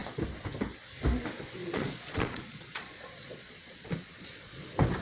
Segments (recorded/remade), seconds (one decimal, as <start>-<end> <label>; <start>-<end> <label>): 0.0-1.6 recorded; 1.6-4.6 remade; 4.6-5.0 recorded